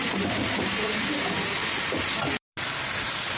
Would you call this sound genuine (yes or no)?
yes